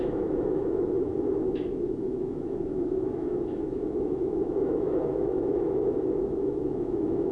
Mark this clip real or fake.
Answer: fake